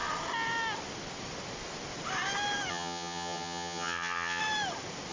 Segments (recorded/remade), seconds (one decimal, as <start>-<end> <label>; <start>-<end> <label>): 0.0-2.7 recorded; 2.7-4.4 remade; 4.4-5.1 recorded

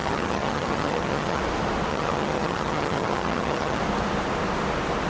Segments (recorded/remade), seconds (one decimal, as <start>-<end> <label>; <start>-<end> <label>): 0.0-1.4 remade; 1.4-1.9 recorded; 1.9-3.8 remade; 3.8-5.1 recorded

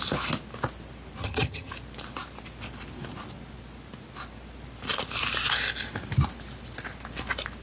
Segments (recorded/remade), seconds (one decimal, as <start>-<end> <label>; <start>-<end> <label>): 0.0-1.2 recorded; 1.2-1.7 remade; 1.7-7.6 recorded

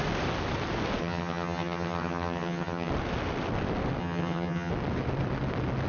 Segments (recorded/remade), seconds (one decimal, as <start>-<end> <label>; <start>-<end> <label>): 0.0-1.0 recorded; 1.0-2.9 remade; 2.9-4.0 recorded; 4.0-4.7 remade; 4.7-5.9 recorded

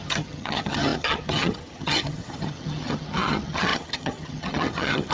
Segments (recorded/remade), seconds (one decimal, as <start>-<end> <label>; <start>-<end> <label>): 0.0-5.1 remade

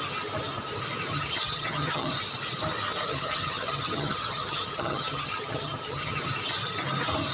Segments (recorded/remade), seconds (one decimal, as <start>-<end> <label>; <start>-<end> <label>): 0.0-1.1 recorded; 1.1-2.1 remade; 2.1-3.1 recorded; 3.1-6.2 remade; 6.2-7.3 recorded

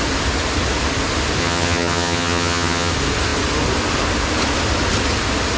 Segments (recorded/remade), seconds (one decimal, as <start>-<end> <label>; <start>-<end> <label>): 0.0-1.4 recorded; 1.4-2.9 remade; 2.9-5.6 recorded

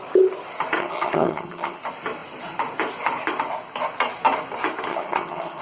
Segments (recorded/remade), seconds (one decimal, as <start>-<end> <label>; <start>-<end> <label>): 0.0-0.8 recorded; 0.8-1.8 remade; 1.8-4.9 recorded; 4.9-5.6 remade